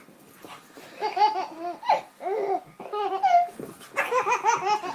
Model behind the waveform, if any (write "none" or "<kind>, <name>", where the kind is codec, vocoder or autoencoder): none